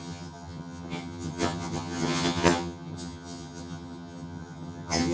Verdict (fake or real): fake